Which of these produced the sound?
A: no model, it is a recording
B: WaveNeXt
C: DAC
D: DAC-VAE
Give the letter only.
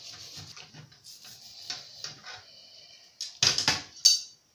A